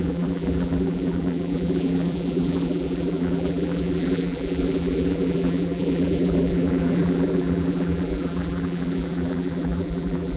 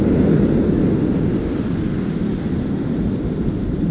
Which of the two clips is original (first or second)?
second